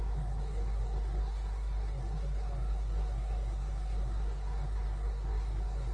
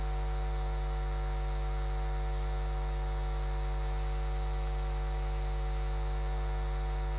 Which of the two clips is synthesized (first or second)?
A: first